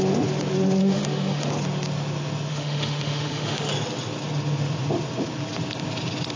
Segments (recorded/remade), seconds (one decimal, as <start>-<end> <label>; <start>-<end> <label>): 0.0-0.8 recorded; 0.8-1.5 remade; 1.5-2.5 recorded; 2.5-3.7 remade; 3.7-6.4 recorded